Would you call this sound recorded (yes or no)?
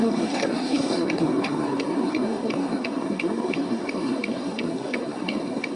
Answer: no